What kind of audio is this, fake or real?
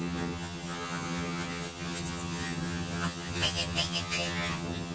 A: fake